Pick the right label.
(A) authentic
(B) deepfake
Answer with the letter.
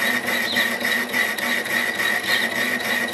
A